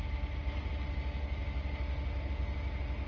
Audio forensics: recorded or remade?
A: recorded